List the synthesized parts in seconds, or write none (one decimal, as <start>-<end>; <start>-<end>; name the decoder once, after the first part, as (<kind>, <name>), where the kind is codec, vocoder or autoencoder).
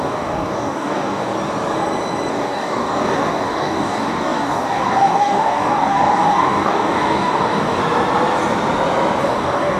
0.0-1.3 (codec, DAC); 2.3-7.8; 9.2-9.8